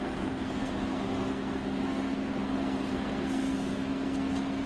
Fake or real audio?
fake